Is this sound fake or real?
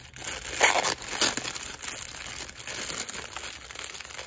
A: real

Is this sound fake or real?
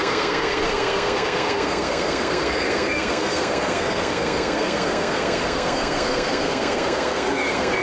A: fake